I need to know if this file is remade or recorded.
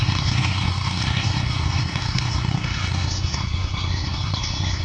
remade